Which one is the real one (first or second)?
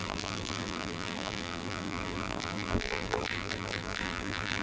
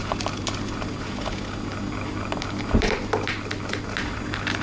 second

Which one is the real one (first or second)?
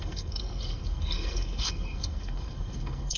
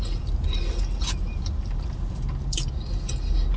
second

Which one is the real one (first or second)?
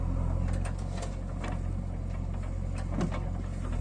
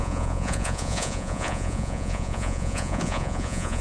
first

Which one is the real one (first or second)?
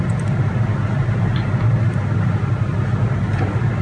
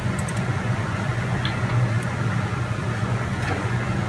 first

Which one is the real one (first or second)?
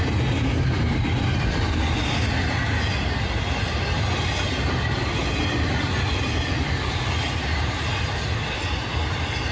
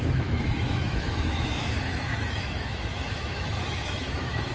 first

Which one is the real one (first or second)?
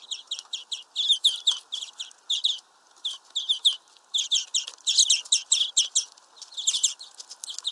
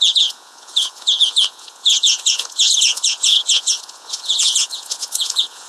first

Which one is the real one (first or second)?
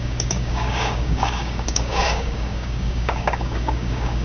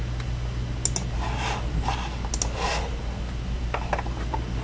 second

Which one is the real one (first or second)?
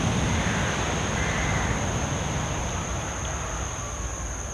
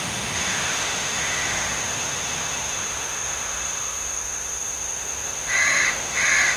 first